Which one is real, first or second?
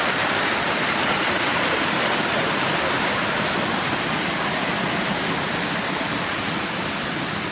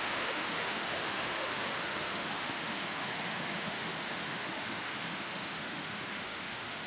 first